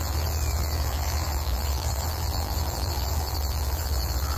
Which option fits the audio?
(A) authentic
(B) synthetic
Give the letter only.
B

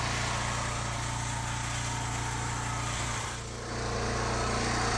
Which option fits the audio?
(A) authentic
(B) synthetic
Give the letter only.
A